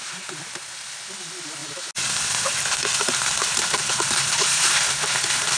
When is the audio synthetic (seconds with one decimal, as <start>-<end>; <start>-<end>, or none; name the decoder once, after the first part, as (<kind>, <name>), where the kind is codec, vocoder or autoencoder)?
none